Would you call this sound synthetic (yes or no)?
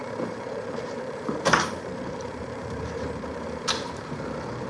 yes